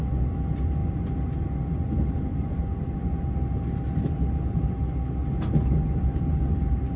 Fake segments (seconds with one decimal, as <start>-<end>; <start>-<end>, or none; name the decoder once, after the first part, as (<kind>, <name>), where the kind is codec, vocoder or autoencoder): none